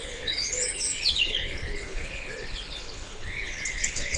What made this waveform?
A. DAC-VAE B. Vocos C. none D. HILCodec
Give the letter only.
D